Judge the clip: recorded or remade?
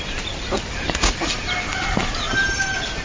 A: recorded